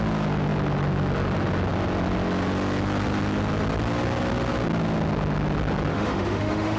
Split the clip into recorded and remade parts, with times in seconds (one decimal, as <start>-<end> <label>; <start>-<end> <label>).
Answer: 0.0-5.9 recorded; 5.9-6.8 remade